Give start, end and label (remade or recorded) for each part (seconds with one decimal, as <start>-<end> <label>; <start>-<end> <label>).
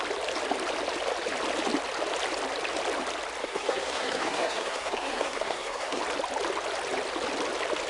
0.0-3.4 recorded; 3.4-6.0 remade; 6.0-7.9 recorded